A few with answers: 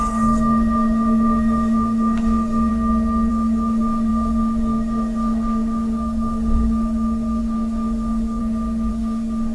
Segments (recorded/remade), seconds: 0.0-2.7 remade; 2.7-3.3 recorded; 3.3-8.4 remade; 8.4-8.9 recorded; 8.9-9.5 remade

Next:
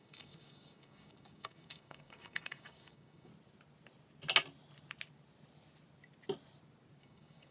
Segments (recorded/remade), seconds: 0.0-3.3 remade; 3.3-7.0 recorded; 7.0-7.5 remade